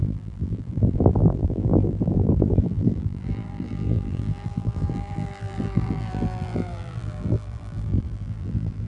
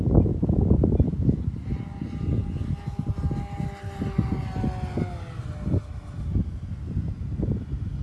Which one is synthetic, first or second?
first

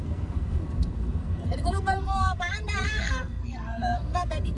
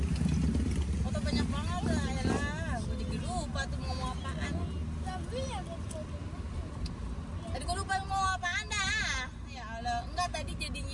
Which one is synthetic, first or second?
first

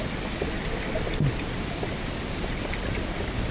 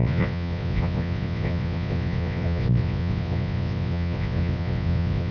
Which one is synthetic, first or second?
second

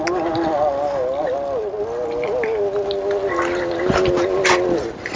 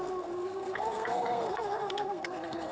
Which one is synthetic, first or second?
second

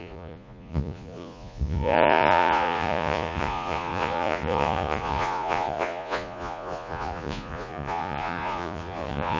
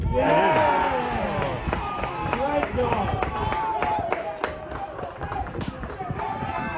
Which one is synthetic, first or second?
first